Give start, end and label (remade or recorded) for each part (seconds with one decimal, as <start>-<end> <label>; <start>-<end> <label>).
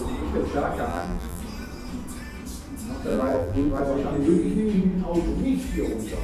0.0-0.9 recorded; 0.9-1.4 remade; 1.4-3.1 recorded; 3.1-3.8 remade; 3.8-6.2 recorded